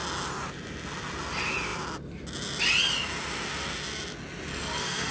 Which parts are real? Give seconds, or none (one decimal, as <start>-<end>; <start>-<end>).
0.0-4.5